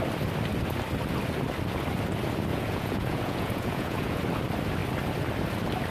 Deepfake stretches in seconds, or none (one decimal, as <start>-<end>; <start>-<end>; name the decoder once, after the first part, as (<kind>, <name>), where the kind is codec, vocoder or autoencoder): 2.5-4.2 (vocoder, Vocos)